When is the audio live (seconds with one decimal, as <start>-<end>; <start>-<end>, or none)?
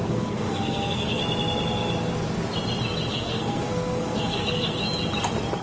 1.2-3.1; 4.8-5.6